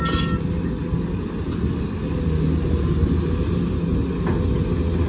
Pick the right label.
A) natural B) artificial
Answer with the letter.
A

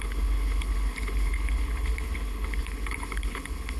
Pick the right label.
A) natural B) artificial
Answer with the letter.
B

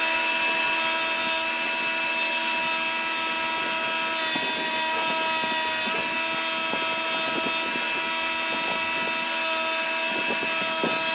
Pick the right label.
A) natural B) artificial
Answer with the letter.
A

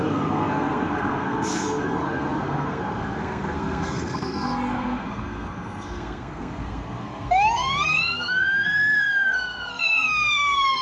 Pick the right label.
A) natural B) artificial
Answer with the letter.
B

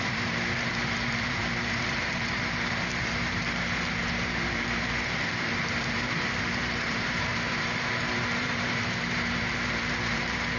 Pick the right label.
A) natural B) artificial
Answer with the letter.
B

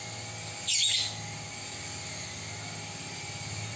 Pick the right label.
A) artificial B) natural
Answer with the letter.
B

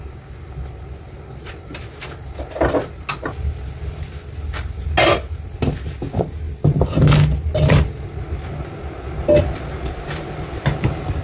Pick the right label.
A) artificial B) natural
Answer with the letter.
B